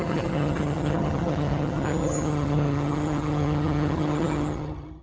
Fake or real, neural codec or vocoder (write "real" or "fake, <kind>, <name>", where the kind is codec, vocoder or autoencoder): fake, vocoder, HiFi-GAN